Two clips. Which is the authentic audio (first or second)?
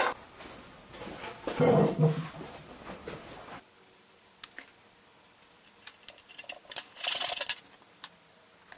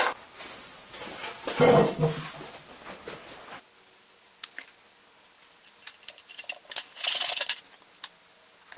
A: second